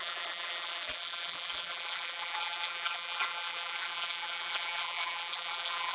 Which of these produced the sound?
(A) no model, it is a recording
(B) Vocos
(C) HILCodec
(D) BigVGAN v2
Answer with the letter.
D